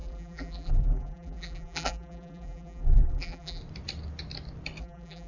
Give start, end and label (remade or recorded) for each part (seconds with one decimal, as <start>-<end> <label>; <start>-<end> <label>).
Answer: 0.0-3.6 remade; 3.6-4.8 recorded; 4.8-5.3 remade